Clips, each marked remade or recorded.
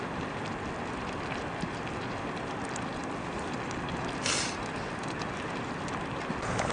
recorded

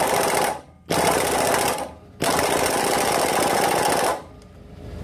recorded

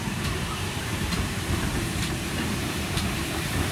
remade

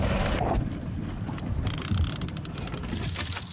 recorded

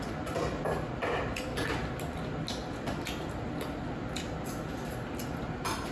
recorded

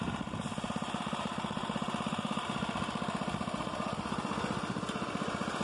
recorded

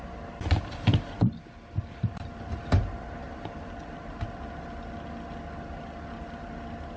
recorded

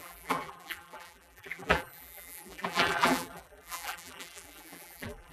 remade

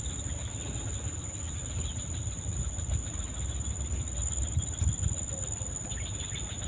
recorded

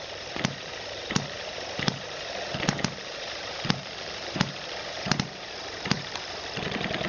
remade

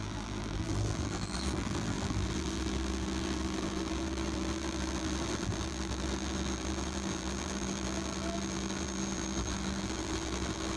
remade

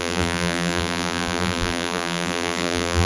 remade